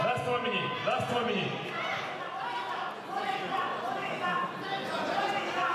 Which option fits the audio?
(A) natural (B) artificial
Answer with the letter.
A